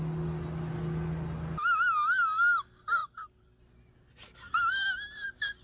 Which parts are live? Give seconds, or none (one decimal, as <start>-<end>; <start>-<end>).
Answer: 0.0-3.0; 3.6-5.6